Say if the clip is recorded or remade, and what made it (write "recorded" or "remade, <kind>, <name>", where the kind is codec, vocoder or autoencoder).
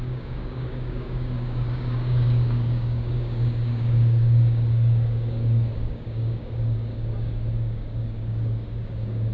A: remade, codec, DAC